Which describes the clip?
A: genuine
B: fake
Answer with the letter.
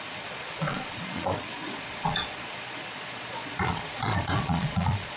B